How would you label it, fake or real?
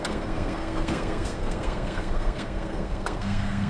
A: fake